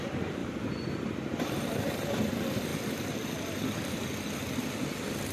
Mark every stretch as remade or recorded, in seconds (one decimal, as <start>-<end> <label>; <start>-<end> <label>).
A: 0.0-0.4 recorded; 0.4-2.3 remade; 2.3-2.7 recorded; 2.7-3.6 remade; 3.6-5.3 recorded